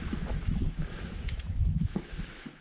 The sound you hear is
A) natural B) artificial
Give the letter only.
B